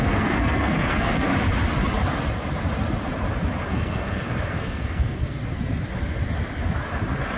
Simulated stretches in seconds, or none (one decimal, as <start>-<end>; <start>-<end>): 0.0-1.3; 3.7-5.4